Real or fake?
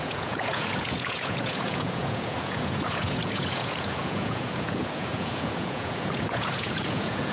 fake